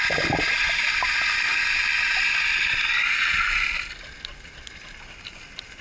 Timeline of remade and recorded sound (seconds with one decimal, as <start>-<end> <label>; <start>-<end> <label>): 0.0-5.8 recorded